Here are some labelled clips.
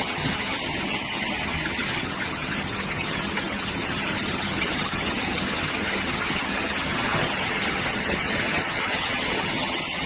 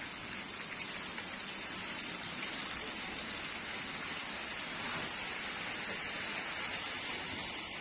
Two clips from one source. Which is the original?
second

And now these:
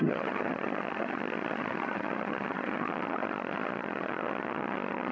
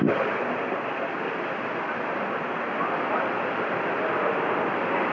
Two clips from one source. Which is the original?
second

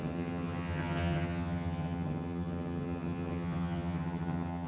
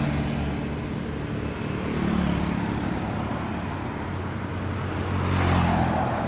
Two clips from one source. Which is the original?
second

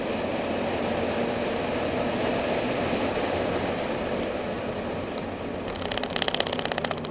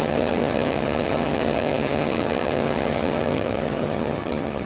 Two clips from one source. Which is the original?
first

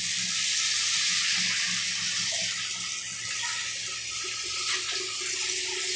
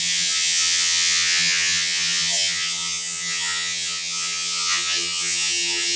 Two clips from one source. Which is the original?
first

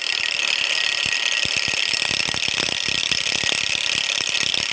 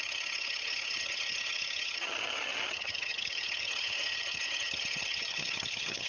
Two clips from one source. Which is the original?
first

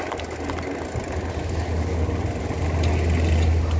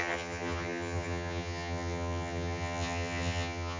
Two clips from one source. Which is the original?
first